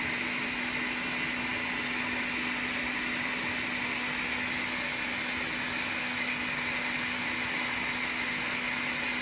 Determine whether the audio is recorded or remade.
recorded